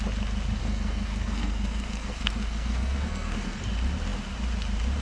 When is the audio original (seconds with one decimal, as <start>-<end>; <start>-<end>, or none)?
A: 0.0-0.6; 3.6-5.0